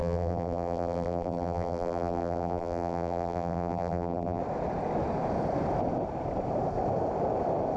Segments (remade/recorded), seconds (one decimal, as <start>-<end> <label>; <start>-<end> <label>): 0.0-4.4 remade; 4.4-7.8 recorded